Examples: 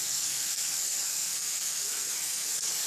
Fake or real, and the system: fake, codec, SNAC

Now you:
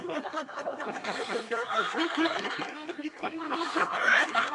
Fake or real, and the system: fake, codec, SNAC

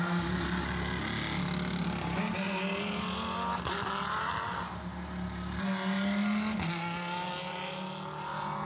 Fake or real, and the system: real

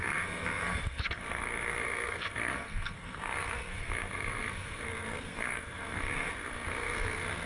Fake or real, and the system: fake, codec, SNAC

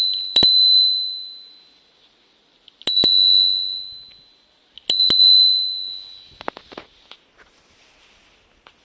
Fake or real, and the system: real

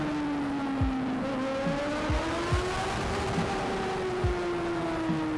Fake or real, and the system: real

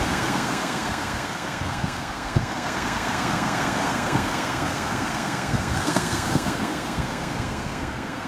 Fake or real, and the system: fake, codec, SNAC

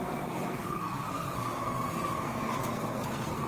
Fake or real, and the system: fake, codec, SNAC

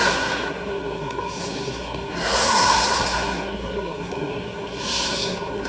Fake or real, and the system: fake, codec, SNAC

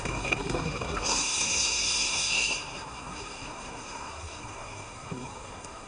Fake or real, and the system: fake, codec, SNAC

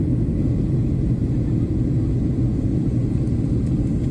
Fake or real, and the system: real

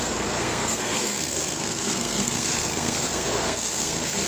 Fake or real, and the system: fake, codec, SNAC